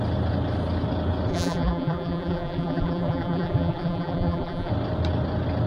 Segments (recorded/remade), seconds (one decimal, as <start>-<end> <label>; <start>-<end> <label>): 0.0-1.3 recorded; 1.3-4.7 remade; 4.7-5.7 recorded